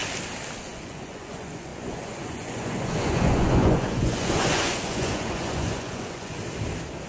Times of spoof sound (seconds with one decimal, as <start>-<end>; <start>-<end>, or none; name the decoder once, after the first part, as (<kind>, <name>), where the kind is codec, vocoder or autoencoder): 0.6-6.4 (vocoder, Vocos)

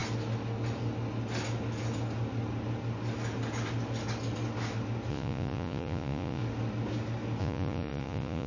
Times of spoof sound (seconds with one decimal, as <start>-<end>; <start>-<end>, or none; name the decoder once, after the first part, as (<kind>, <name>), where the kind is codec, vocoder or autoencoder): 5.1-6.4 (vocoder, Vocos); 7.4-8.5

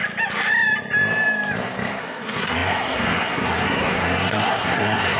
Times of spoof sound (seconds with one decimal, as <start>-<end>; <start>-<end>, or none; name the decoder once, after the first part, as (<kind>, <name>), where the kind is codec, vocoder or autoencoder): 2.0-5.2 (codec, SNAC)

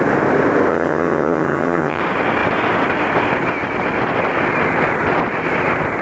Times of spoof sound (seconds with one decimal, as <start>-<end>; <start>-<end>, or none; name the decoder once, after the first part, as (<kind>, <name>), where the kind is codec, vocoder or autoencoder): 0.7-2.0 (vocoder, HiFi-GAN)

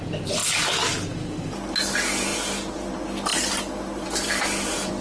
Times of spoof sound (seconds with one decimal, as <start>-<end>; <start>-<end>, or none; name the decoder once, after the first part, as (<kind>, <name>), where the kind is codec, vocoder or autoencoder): none